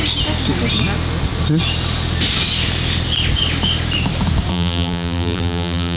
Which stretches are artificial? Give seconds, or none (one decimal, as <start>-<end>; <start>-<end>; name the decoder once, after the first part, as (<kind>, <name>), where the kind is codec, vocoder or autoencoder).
4.5-6.0 (vocoder, BigVGAN v2)